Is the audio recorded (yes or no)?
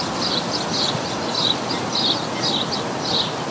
yes